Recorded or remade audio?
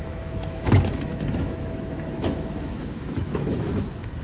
remade